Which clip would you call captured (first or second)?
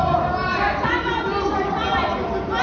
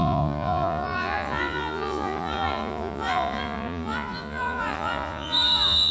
first